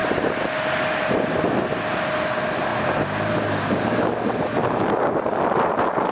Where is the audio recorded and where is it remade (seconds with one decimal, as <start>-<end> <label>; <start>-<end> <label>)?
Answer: 0.0-6.1 recorded